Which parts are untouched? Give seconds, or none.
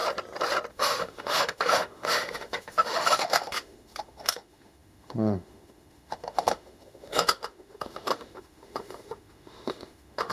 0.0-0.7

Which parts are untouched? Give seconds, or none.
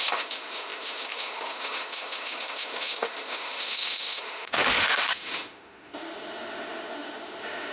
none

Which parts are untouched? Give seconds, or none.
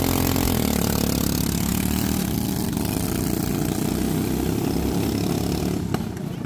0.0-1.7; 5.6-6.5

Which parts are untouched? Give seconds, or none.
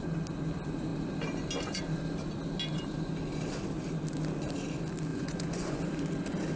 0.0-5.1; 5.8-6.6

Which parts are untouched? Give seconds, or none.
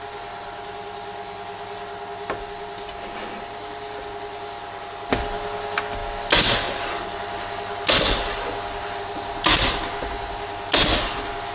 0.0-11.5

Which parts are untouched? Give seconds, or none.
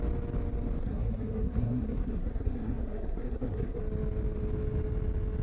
0.0-0.8; 3.8-5.4